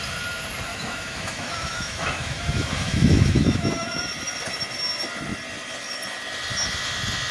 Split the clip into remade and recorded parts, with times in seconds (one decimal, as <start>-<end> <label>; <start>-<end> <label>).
0.0-0.7 recorded; 0.7-4.0 remade; 4.0-7.3 recorded